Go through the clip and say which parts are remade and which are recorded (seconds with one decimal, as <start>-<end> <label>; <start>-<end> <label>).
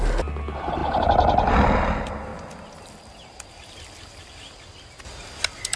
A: 0.0-5.8 recorded